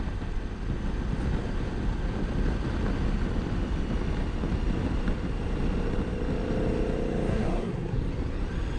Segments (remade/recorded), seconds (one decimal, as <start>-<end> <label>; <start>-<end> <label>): 0.0-7.3 recorded; 7.3-8.0 remade; 8.0-8.8 recorded

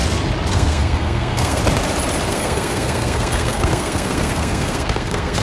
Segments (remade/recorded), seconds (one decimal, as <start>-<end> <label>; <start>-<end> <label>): 0.0-0.5 recorded; 0.5-1.6 remade; 1.6-2.3 recorded; 2.3-5.4 remade

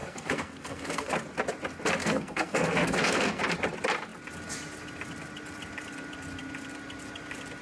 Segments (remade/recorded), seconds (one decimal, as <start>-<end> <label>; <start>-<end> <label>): 0.0-1.1 remade; 1.1-2.0 recorded; 2.0-3.4 remade; 3.4-7.6 recorded

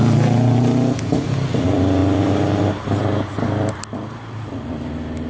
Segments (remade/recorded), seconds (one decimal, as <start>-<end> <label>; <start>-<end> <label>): 0.0-5.3 recorded

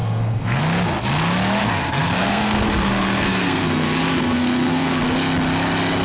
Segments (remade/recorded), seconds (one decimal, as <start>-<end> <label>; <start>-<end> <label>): 0.0-0.6 remade; 0.6-1.6 recorded; 1.6-5.0 remade; 5.0-6.0 recorded

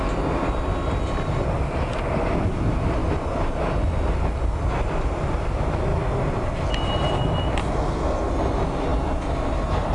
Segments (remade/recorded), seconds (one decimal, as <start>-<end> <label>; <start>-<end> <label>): 0.0-7.6 recorded; 7.6-8.3 remade; 8.3-9.9 recorded

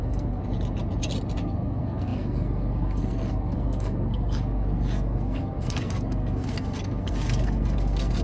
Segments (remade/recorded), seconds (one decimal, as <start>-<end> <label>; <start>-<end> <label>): 0.0-0.4 remade; 0.4-1.4 recorded; 1.4-8.2 remade

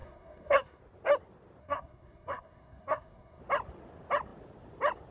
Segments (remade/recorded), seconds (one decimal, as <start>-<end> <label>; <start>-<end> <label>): 0.0-0.8 remade; 0.8-1.6 recorded; 1.6-3.4 remade; 3.4-5.1 recorded